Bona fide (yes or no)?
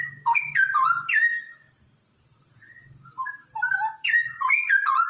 yes